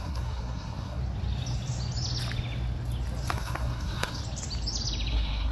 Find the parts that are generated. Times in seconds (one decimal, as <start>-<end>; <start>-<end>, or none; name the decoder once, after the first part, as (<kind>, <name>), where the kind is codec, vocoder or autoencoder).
0.0-1.0 (codec, SNAC); 3.3-4.2; 5.1-5.5